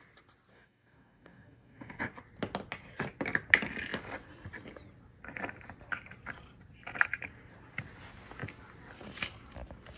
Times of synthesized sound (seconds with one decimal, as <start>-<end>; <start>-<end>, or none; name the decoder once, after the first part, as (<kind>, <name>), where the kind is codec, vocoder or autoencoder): 0.5-2.1 (codec, DAC)